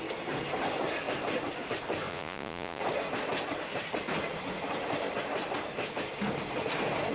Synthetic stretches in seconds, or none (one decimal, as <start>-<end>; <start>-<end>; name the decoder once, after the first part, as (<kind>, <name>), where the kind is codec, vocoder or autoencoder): 2.1-2.8 (vocoder, Vocos)